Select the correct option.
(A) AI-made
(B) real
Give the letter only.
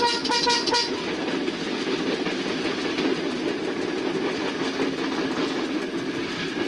B